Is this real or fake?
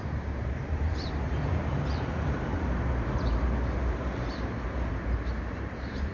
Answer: fake